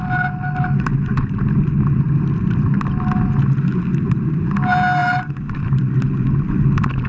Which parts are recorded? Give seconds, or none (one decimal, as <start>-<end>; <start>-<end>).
0.0-5.0; 5.5-7.1